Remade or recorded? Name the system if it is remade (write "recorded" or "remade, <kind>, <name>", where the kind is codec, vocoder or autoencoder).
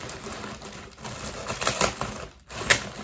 recorded